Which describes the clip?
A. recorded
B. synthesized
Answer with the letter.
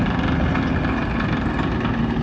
A